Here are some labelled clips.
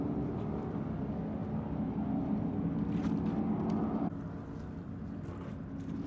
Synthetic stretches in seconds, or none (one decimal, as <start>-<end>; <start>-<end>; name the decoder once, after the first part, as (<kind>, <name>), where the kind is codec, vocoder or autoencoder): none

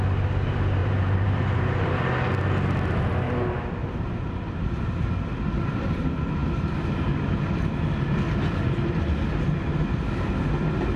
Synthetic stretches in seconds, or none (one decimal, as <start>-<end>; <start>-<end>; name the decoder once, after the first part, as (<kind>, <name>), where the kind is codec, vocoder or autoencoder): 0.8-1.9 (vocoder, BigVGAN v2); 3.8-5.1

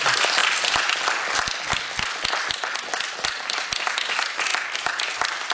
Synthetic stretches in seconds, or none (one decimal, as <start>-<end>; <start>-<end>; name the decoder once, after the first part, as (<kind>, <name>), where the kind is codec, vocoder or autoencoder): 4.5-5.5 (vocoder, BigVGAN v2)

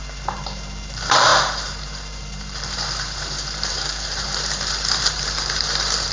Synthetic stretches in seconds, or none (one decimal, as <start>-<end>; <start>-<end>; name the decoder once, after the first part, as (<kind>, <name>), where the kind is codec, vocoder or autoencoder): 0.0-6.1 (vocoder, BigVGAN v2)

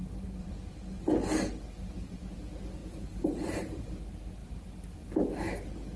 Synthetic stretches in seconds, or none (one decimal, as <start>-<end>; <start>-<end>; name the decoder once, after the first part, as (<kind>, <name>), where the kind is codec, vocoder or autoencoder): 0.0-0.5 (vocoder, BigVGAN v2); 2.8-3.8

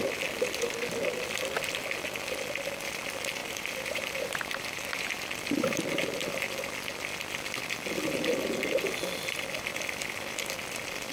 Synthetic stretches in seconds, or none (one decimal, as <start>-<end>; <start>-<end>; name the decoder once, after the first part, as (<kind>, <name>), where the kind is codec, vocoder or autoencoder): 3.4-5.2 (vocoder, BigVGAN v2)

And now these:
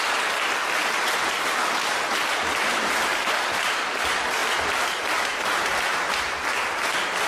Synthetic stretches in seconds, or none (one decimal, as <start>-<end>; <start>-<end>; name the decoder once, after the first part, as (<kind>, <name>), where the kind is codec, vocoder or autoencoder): 0.8-1.3 (vocoder, BigVGAN v2); 2.7-3.4